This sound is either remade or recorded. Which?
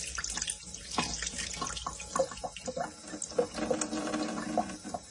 recorded